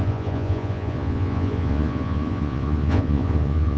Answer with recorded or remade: remade